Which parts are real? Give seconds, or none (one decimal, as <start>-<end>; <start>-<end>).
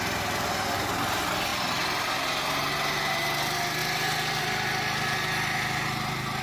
0.0-6.4